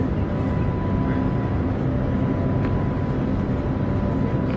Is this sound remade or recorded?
recorded